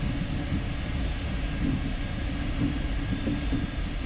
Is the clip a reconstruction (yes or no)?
no